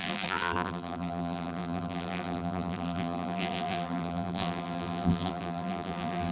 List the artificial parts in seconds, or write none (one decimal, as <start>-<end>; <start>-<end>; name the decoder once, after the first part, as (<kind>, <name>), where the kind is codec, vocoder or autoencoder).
0.0-6.3 (vocoder, BigVGAN v2)